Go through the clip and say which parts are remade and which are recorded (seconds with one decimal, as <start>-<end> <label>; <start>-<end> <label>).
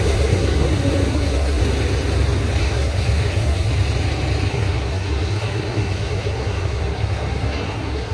0.0-1.6 remade; 1.6-2.6 recorded; 2.6-3.7 remade; 3.7-4.5 recorded; 4.5-8.1 remade